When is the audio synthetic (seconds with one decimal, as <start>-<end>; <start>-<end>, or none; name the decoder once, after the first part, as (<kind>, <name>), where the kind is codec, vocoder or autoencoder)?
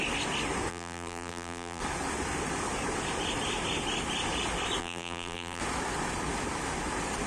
0.7-1.8 (vocoder, BigVGAN v2); 4.8-5.6